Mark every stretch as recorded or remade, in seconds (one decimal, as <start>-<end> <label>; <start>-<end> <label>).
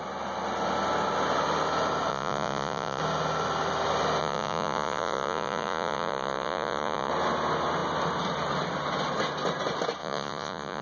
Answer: 0.0-2.1 recorded; 2.1-3.0 remade; 3.0-4.2 recorded; 4.2-7.1 remade; 7.1-10.0 recorded; 10.0-10.8 remade